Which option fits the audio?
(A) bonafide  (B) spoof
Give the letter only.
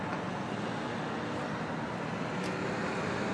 A